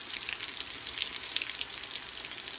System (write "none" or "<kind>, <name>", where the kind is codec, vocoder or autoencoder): none